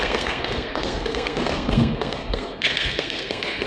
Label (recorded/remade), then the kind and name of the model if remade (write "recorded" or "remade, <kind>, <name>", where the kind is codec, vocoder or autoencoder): remade, codec, SNAC